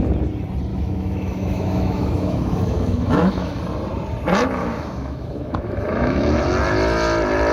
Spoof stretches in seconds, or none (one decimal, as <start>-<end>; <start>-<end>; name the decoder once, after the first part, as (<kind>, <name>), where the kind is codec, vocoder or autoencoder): 0.7-3.6 (autoencoder, DAC-VAE); 4.6-6.4